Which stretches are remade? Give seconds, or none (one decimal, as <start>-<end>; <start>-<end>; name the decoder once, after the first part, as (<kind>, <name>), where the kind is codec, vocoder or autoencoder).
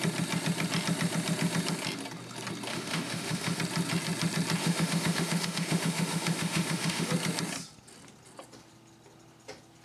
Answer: 2.7-3.6 (autoencoder, DAC-VAE); 4.6-7.1